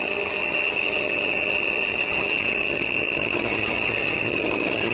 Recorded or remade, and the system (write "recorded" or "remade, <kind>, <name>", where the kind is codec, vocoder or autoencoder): remade, vocoder, HiFi-GAN